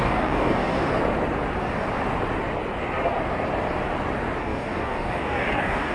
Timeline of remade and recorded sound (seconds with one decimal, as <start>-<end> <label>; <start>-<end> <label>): 0.0-0.9 remade; 0.9-4.4 recorded; 4.4-5.9 remade